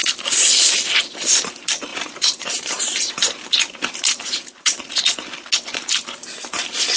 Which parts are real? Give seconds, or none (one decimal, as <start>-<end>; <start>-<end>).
0.0-1.9; 5.0-7.0